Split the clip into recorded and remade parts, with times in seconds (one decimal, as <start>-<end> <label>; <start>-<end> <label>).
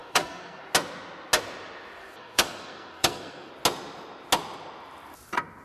0.0-0.6 remade; 0.6-2.0 recorded; 2.0-3.5 remade; 3.5-5.6 recorded